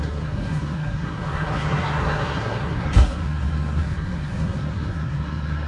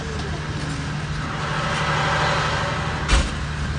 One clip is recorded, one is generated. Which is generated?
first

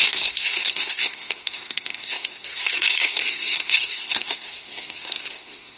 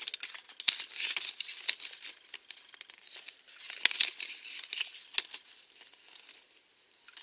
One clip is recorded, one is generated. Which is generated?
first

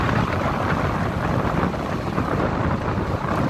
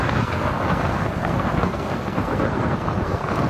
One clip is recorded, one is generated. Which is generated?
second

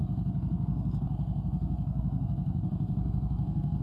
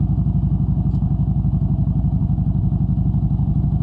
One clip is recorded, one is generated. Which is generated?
first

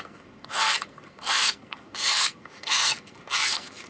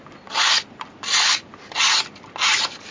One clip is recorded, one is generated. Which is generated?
first